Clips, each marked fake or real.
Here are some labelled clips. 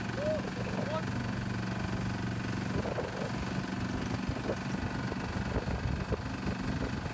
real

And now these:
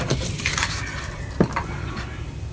real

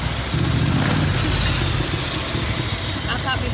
real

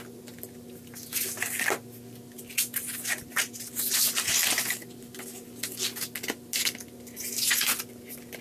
real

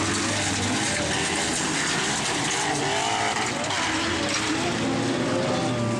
real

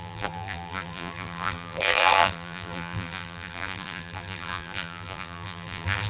fake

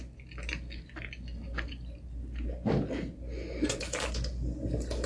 real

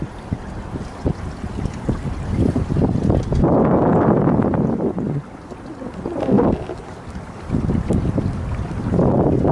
real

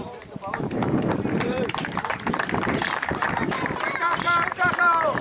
fake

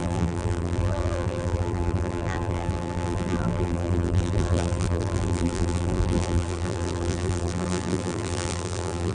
fake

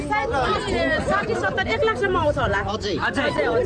fake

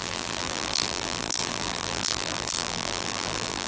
fake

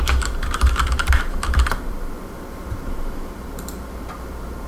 fake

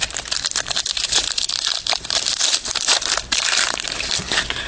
fake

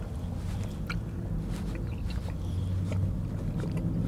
real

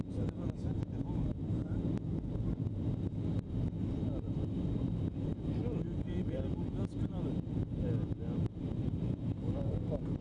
fake